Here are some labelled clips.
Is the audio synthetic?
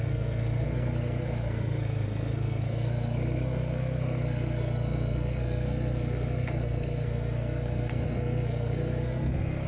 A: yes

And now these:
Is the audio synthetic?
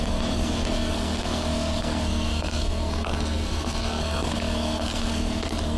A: yes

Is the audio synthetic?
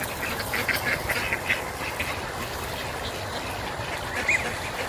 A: no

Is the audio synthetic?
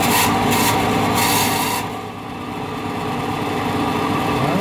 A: no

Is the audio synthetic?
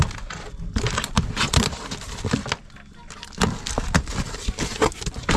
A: no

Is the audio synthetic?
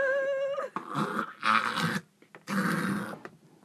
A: no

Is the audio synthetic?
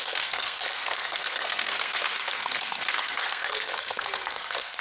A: yes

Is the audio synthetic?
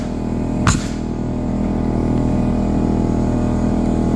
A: no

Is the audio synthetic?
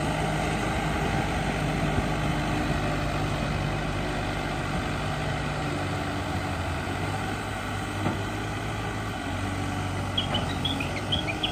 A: no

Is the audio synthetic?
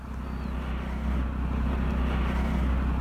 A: no